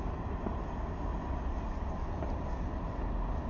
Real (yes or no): yes